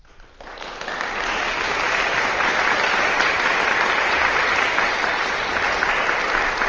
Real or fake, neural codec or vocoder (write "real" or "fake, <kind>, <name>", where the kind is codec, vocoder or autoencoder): real